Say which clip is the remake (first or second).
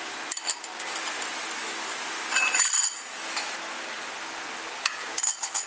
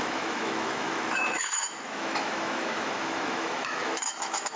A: second